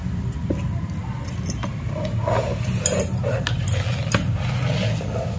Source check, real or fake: real